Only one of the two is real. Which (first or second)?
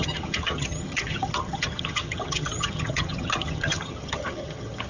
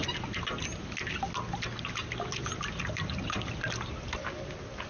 second